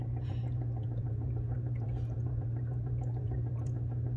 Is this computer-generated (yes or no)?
yes